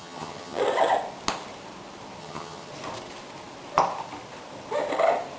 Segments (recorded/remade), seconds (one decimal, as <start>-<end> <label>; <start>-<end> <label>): 0.0-0.6 remade; 0.6-2.2 recorded; 2.2-2.7 remade; 2.7-5.4 recorded